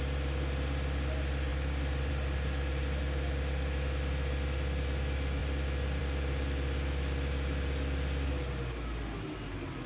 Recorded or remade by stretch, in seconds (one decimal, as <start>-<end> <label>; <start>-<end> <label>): 0.0-9.9 recorded